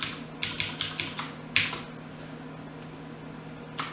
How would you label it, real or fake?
real